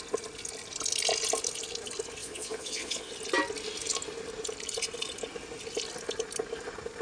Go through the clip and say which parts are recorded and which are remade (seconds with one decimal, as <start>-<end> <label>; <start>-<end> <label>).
0.0-2.2 recorded; 2.2-3.1 remade; 3.1-7.0 recorded